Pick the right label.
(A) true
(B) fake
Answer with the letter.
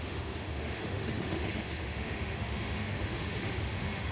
B